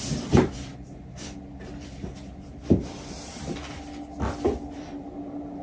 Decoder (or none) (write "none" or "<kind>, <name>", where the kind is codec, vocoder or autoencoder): none